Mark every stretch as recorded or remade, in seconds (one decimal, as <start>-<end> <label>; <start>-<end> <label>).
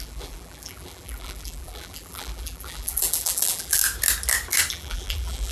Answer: 0.0-3.8 remade; 3.8-4.7 recorded; 4.7-5.5 remade